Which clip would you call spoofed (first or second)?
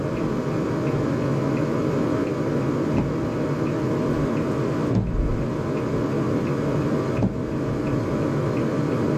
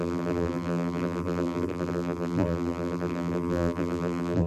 second